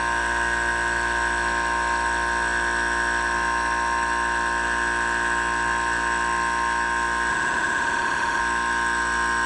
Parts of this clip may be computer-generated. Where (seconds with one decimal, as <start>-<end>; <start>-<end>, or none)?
7.3-8.4